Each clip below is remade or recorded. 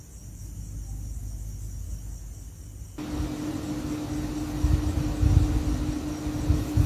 recorded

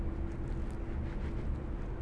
recorded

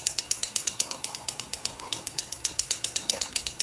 remade